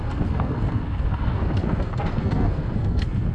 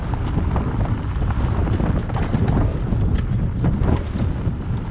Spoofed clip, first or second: first